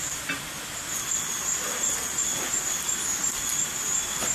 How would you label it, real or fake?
real